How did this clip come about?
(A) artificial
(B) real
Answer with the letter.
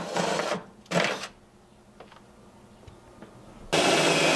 B